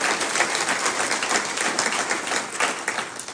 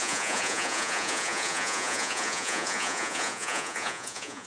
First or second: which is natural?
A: first